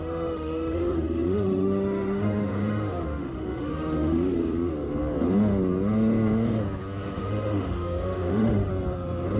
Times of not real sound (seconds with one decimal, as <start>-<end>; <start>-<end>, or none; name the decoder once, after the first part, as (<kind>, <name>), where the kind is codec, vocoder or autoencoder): 0.0-4.4 (autoencoder, DAC-VAE); 7.2-8.7